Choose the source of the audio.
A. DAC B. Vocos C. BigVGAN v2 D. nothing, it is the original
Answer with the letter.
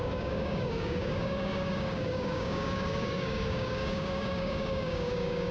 A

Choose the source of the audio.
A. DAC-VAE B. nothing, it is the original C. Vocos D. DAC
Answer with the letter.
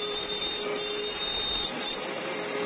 B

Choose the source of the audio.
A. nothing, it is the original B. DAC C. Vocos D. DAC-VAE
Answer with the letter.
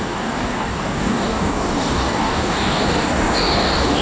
B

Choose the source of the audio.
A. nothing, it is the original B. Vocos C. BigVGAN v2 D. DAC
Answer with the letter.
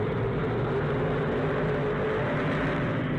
A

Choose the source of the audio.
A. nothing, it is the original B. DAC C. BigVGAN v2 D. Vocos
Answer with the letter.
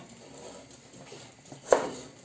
A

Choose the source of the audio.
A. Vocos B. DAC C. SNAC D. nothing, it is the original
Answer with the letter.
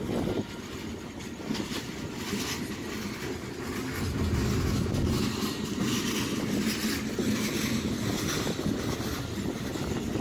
D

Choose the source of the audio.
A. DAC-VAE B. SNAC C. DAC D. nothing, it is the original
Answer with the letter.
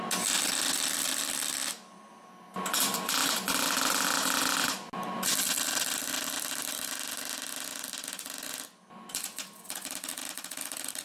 D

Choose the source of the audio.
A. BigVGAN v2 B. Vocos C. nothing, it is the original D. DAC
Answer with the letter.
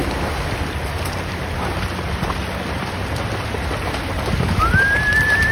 C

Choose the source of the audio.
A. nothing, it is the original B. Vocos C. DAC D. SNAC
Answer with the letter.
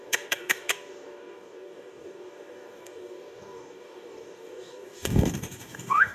C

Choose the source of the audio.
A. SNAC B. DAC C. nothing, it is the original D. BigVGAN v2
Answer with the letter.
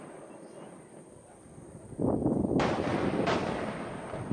C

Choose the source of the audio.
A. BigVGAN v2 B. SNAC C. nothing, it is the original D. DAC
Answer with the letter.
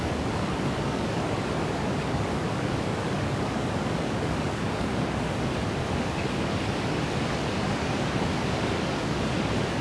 D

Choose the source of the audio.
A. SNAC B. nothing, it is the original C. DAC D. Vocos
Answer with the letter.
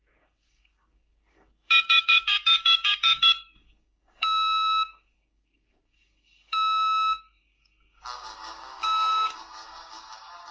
C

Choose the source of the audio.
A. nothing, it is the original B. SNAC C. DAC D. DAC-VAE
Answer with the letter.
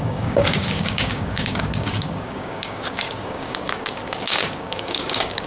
C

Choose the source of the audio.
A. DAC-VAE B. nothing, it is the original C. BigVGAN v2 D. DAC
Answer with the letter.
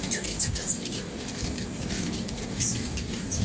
D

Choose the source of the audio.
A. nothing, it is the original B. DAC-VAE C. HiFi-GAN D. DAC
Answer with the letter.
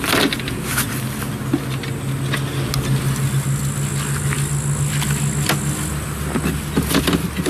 A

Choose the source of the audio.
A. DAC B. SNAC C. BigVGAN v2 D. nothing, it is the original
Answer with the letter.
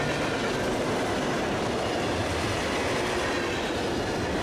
D